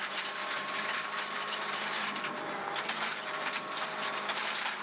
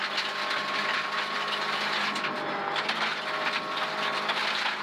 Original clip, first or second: second